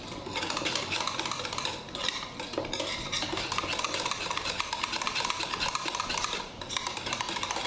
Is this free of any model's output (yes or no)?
yes